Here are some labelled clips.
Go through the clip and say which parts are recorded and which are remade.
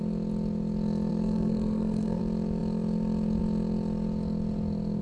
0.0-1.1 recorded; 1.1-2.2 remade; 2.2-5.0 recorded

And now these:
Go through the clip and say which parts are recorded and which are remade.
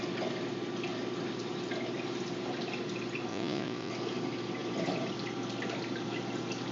0.0-3.3 recorded; 3.3-3.9 remade; 3.9-6.7 recorded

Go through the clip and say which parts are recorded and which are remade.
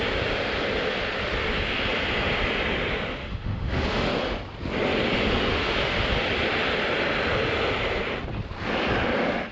0.0-3.2 recorded; 3.2-4.1 remade; 4.1-5.5 recorded; 5.5-6.0 remade; 6.0-9.5 recorded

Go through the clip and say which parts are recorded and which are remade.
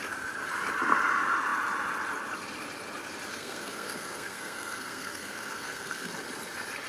0.0-3.3 recorded; 3.3-6.1 remade; 6.1-6.9 recorded